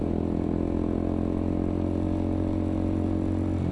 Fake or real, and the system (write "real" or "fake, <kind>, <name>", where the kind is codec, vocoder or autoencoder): real